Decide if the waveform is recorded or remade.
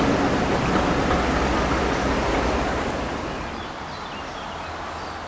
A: recorded